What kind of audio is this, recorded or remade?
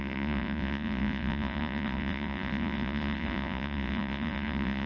remade